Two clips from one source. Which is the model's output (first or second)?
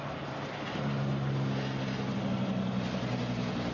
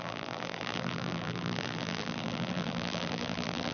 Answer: second